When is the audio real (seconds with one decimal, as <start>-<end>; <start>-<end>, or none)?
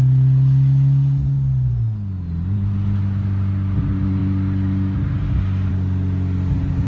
0.0-6.9